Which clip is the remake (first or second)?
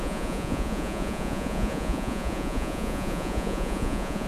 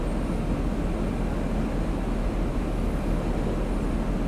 first